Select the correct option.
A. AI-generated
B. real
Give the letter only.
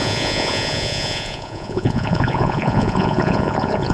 A